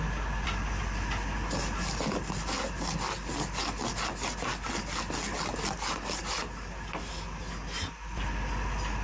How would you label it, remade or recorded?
recorded